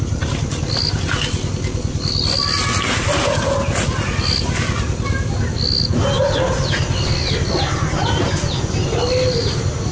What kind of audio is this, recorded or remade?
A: recorded